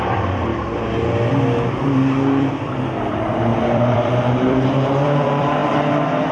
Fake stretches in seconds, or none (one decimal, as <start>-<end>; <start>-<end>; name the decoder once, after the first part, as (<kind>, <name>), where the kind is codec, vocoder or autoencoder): 0.0-0.5 (vocoder, BigVGAN v2); 1.7-6.3